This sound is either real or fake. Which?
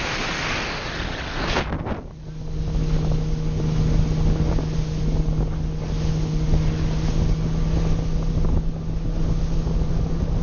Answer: real